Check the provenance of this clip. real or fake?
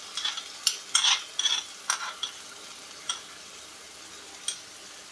real